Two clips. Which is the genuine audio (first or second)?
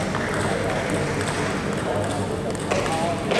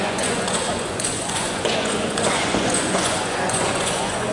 first